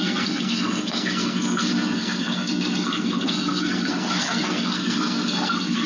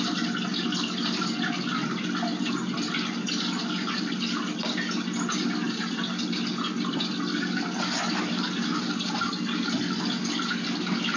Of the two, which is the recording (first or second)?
second